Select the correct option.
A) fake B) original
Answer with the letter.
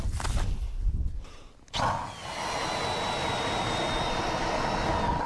B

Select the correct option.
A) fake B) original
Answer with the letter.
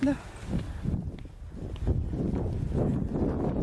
B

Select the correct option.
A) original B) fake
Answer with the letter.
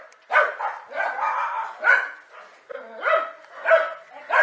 A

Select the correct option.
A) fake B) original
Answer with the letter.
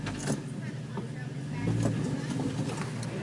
B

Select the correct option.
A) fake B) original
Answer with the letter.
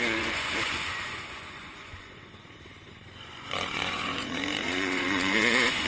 A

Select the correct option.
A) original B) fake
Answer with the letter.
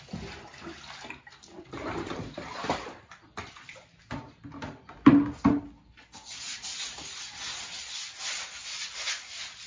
A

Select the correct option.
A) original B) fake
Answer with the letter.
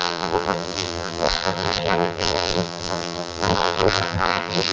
B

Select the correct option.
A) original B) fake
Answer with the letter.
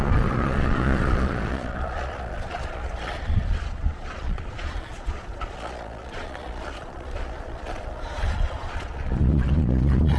B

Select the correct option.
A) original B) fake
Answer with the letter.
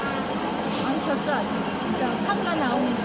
A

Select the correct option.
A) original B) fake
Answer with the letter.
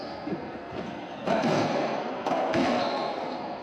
B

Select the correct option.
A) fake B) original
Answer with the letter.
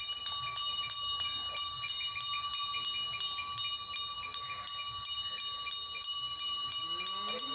B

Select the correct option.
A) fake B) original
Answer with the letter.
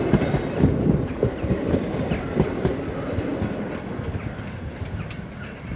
B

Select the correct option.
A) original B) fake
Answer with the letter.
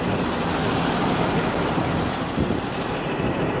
A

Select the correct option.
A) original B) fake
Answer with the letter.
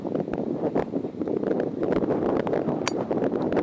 A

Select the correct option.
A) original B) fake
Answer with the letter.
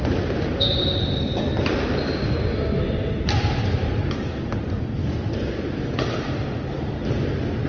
A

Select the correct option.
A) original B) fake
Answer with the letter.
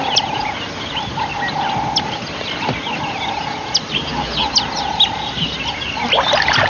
A